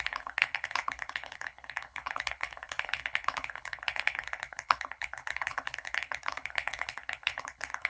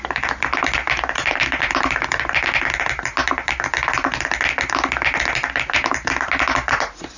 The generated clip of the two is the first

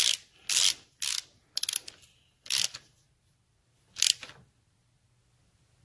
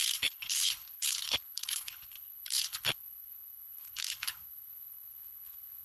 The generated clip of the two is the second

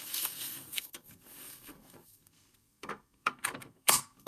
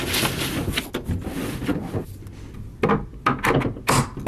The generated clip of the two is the first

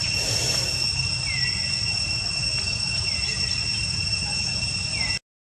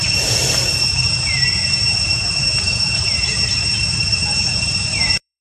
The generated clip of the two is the second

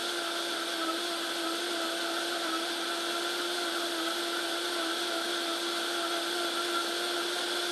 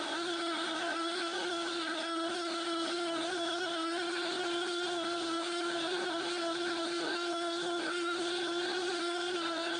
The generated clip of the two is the second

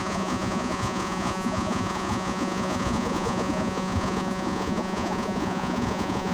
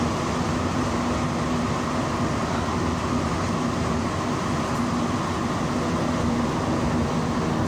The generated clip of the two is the first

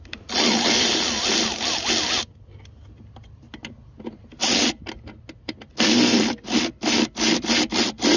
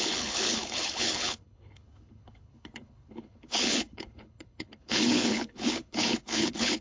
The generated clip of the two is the second